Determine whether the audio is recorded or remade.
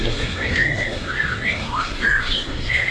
remade